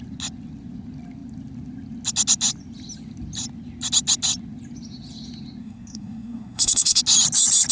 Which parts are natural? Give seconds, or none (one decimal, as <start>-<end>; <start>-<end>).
0.0-5.6; 7.0-7.7